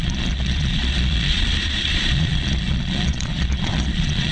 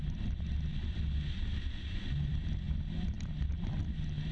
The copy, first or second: first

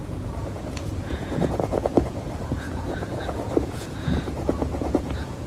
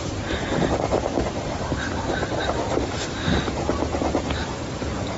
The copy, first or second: first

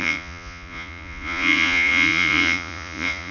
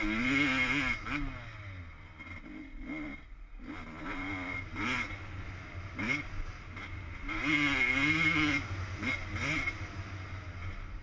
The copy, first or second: first